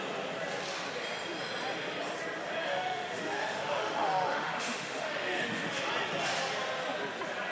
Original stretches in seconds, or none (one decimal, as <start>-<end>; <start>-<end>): 0.0-2.7; 5.9-7.5